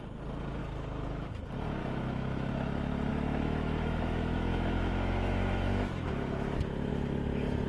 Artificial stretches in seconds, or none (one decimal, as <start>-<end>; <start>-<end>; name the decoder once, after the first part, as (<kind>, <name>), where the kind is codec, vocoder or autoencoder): 0.6-1.3 (autoencoder, DAC-VAE); 1.8-2.5; 3.1-6.9